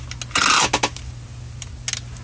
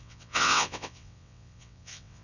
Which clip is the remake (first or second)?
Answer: second